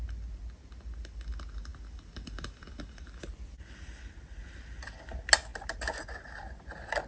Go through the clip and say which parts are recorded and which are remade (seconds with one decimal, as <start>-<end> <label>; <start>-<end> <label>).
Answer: 0.0-7.1 recorded